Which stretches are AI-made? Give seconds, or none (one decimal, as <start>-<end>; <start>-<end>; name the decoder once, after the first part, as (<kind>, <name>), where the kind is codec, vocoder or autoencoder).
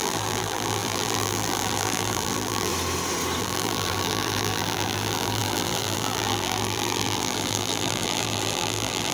0.0-2.7 (vocoder, BigVGAN v2); 3.4-9.1